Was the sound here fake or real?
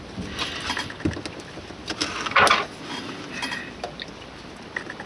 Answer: real